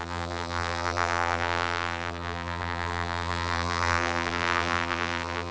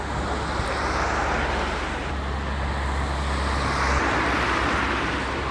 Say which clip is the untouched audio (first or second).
second